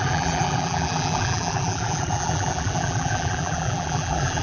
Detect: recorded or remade remade